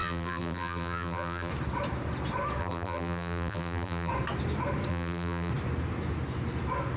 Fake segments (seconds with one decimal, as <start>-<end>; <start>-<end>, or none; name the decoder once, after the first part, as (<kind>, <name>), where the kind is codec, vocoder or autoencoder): 0.0-1.5 (vocoder, BigVGAN v2); 2.6-4.1; 4.9-5.5